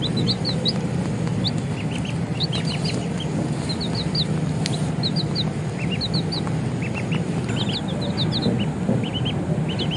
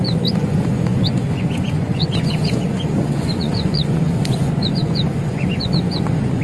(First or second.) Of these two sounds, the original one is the first